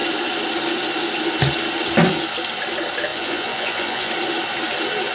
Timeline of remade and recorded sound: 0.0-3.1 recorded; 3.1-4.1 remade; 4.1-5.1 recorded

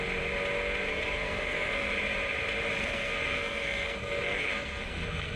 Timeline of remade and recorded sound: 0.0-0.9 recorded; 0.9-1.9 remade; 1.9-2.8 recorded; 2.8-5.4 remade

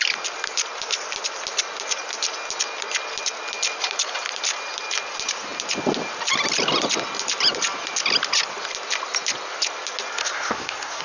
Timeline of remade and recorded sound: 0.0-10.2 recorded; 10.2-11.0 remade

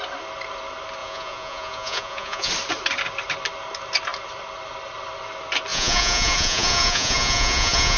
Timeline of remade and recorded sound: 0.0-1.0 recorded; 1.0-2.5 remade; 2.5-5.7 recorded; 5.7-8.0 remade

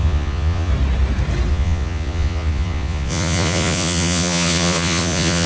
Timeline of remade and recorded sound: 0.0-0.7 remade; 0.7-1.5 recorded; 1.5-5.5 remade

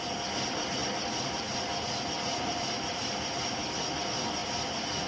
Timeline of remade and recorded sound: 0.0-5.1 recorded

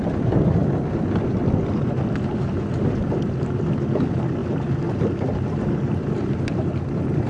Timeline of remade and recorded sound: 0.0-7.3 recorded

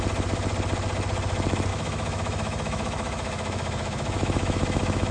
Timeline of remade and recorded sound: 0.0-1.7 recorded; 1.7-5.1 remade